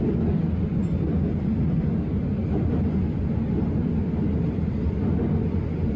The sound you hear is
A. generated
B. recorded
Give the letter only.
B